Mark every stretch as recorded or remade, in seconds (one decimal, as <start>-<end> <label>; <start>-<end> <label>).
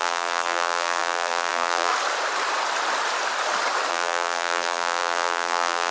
0.0-1.9 remade; 1.9-3.9 recorded; 3.9-5.9 remade